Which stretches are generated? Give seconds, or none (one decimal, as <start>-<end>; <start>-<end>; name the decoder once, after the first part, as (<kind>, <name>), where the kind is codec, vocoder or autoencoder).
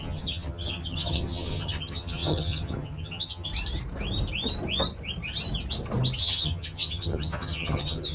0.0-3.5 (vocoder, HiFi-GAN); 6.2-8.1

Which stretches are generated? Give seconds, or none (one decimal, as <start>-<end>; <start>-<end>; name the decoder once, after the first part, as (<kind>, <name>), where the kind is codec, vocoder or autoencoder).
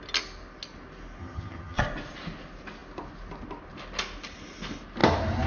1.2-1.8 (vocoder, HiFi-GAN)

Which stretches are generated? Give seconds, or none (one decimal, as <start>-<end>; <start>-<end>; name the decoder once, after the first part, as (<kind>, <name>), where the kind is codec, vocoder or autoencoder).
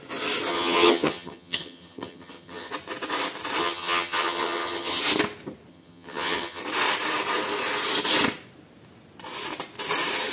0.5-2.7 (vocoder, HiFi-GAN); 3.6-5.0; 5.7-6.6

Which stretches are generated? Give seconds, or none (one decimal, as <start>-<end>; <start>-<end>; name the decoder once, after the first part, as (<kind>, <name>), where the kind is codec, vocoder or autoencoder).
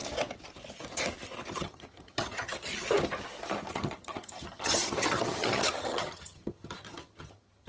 1.5-2.7 (vocoder, HiFi-GAN); 3.7-7.7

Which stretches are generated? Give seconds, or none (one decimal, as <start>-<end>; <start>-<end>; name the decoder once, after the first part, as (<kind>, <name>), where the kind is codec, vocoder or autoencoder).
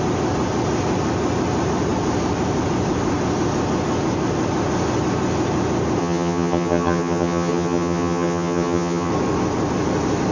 6.0-9.1 (vocoder, HiFi-GAN)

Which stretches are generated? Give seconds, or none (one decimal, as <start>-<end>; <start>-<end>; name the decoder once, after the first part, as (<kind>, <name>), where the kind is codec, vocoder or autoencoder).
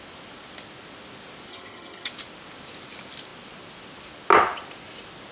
1.5-2.1 (vocoder, HiFi-GAN)